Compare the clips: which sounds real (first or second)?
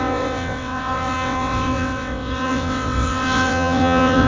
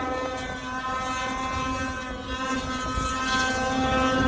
second